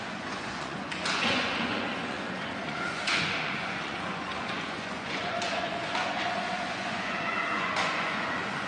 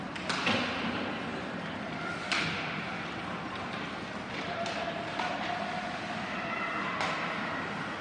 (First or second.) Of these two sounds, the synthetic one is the first